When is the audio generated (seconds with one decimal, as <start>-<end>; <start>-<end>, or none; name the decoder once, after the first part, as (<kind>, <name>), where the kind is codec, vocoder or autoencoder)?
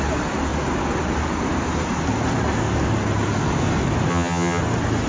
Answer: 4.1-4.6 (vocoder, HiFi-GAN)